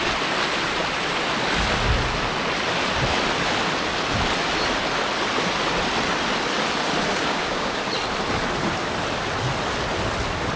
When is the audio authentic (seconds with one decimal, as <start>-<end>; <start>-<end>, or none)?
0.0-7.1; 7.8-10.6